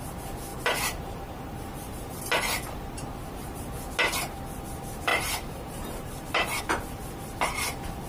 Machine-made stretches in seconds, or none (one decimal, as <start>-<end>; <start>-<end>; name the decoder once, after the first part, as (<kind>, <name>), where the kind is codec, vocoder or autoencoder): 0.5-2.2 (vocoder, BigVGAN v2); 5.1-6.6